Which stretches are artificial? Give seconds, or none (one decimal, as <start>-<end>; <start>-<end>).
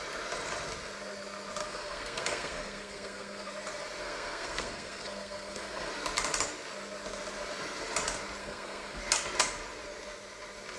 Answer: 1.6-3.5; 4.0-5.9; 8.4-9.0